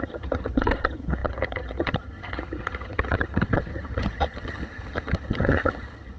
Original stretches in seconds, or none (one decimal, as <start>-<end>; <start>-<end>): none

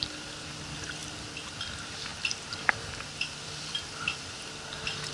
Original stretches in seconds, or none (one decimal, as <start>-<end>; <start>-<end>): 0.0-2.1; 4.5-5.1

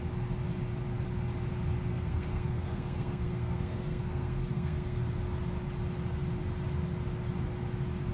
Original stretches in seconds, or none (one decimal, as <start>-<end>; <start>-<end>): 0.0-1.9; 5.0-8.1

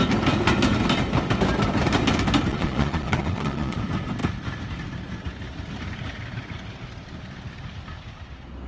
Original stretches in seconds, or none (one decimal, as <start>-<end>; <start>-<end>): 0.0-2.5; 3.8-8.7